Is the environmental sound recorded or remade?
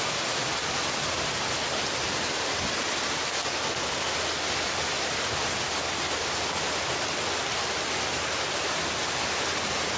recorded